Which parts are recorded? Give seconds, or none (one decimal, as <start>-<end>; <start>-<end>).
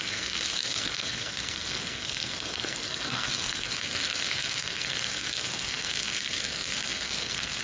none